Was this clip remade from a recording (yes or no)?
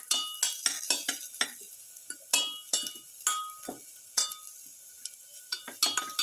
no